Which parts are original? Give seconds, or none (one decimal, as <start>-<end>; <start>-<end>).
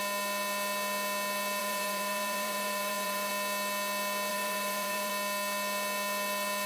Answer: 0.0-1.6; 3.3-4.3; 5.1-6.7